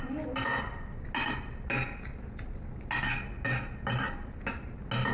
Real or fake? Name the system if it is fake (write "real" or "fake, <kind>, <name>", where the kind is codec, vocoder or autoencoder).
real